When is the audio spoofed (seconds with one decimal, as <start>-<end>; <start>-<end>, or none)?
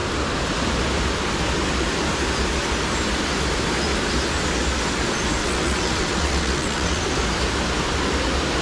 5.4-7.0